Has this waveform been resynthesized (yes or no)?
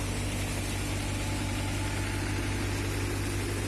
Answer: no